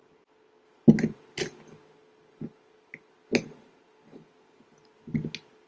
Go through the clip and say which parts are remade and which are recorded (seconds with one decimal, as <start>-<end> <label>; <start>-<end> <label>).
0.0-5.7 recorded